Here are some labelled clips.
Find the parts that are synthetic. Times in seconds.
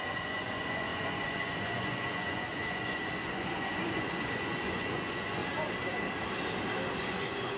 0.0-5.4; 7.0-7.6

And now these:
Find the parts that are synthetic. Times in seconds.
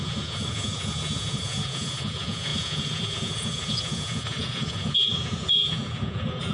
0.0-6.5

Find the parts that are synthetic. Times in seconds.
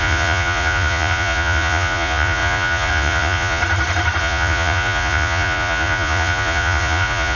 0.0-3.6; 4.2-7.4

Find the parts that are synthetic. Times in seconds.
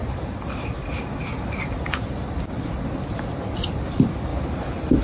none